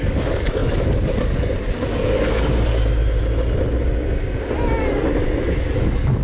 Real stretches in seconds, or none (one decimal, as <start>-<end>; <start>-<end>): 2.8-5.4